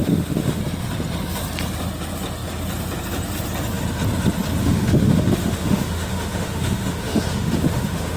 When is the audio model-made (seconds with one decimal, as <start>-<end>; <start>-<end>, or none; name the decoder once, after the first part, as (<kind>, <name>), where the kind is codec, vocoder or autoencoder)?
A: 0.0-0.6 (autoencoder, DAC-VAE); 4.6-8.2